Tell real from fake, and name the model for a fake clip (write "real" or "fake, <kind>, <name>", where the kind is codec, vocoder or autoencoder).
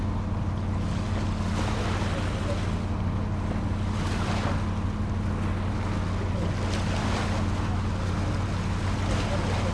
real